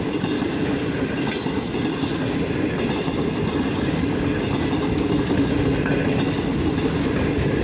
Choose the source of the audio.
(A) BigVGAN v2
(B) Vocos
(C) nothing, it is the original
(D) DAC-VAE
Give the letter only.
C